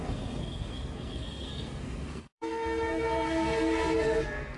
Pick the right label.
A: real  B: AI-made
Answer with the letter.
B